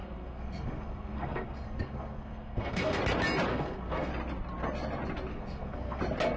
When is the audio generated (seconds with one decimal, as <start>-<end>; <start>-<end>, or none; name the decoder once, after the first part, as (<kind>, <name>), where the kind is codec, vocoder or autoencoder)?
0.0-3.0 (codec, SNAC); 3.5-4.1; 5.3-6.0